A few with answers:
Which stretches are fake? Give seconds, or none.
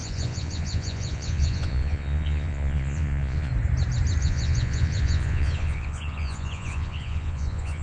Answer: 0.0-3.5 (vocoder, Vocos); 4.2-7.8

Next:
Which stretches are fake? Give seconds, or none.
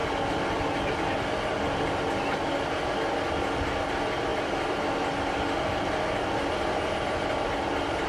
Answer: none